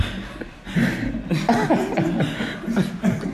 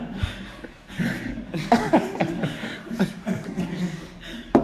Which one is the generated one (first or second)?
second